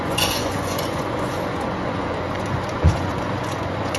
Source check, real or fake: fake